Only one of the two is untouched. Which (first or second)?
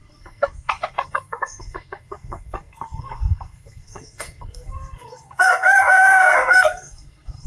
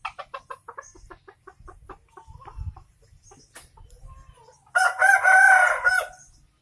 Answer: second